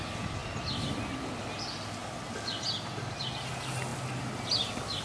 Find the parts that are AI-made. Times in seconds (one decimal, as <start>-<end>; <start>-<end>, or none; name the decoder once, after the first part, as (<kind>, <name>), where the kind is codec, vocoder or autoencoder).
none